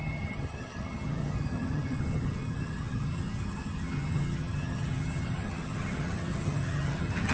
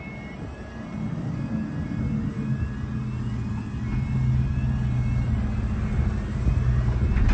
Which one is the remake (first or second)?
first